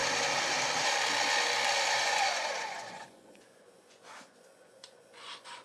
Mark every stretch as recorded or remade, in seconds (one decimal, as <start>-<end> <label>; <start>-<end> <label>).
0.0-1.9 recorded; 1.9-5.6 remade